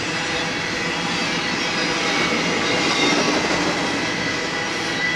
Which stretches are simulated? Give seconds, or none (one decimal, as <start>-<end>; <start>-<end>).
none